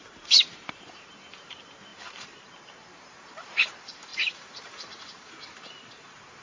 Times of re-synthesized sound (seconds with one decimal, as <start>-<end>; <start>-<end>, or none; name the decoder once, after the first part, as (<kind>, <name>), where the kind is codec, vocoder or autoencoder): 0.0-6.4 (vocoder, BigVGAN v2)